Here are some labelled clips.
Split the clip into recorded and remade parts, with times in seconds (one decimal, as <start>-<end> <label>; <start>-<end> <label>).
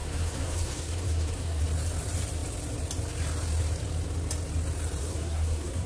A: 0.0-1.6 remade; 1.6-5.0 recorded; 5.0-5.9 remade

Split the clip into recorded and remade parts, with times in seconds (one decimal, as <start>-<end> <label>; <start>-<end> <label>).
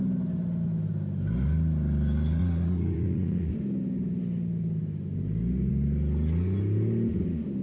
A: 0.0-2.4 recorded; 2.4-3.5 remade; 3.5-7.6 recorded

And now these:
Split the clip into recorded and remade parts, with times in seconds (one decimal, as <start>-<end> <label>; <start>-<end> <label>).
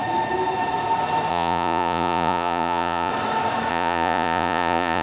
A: 0.0-1.3 recorded; 1.3-3.1 remade; 3.1-3.7 recorded; 3.7-5.0 remade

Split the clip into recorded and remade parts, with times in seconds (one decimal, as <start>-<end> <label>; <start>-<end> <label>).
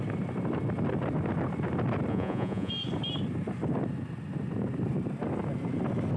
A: 0.0-2.1 recorded; 2.1-2.7 remade; 2.7-6.2 recorded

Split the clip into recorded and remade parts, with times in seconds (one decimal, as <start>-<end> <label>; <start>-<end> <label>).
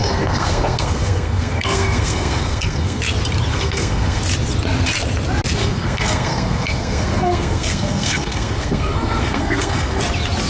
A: 0.0-3.0 remade; 3.0-3.5 recorded; 3.5-4.2 remade; 4.2-5.6 recorded; 5.6-10.0 remade; 10.0-10.5 recorded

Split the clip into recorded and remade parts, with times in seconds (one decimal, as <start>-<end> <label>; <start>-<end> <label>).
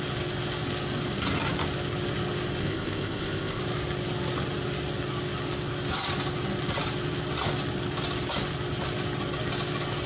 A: 0.0-2.6 recorded; 2.6-3.6 remade; 3.6-10.1 recorded